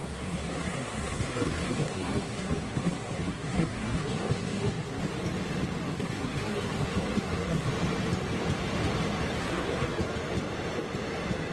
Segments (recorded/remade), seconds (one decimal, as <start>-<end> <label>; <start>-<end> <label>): 0.0-5.0 remade; 5.0-5.9 recorded; 5.9-7.7 remade; 7.7-9.4 recorded; 9.4-10.0 remade; 10.0-11.5 recorded